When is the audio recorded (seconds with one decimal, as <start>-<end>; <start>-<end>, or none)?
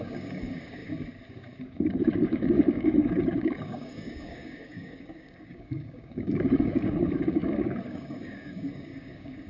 0.8-1.3